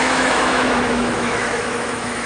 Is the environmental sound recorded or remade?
remade